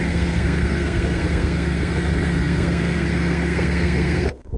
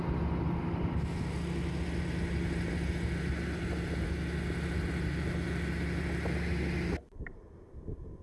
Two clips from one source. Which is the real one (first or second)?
second